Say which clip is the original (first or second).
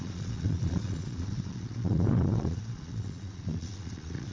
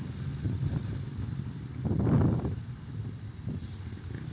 second